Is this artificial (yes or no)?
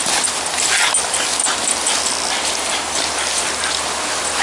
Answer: no